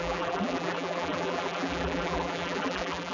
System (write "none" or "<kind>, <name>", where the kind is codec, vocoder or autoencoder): vocoder, BigVGAN v2